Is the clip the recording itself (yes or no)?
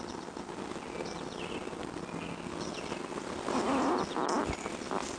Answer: yes